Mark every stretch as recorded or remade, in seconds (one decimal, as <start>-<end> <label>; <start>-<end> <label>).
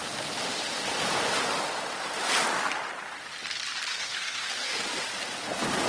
0.0-3.9 recorded; 3.9-4.8 remade; 4.8-5.9 recorded